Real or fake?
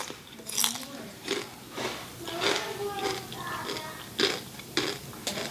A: real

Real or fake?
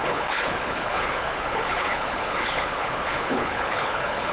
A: fake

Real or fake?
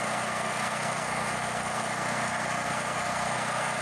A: fake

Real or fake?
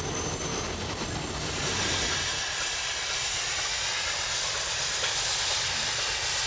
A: real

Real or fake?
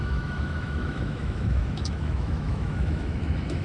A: fake